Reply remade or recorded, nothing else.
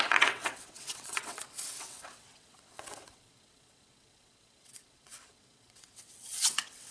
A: remade